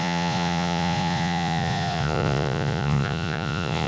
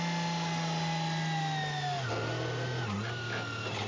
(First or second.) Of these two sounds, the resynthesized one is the first